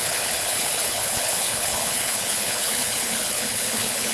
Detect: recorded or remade remade